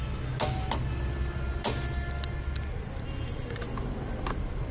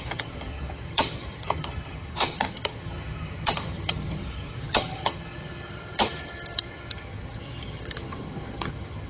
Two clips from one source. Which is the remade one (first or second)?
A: second